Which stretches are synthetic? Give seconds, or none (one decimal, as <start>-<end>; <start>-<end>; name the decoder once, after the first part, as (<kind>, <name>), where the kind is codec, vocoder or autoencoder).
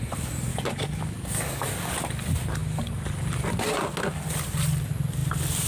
0.5-1.9 (codec, DAC)